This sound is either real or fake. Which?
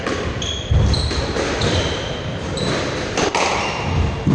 fake